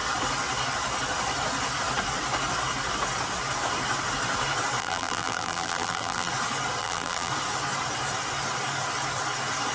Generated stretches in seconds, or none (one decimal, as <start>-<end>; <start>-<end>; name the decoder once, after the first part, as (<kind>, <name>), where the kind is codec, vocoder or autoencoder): 4.8-6.3 (vocoder, BigVGAN v2); 6.8-7.3